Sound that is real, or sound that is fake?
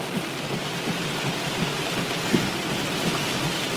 real